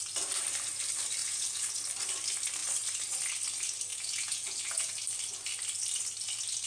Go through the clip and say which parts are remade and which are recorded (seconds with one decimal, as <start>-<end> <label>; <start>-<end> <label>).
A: 0.0-1.2 recorded; 1.2-1.8 remade; 1.8-3.9 recorded; 3.9-4.9 remade; 4.9-6.7 recorded